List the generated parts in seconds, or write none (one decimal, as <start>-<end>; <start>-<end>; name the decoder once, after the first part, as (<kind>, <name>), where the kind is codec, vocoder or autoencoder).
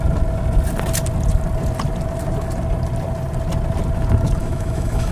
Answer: 4.4-5.1 (autoencoder, DAC-VAE)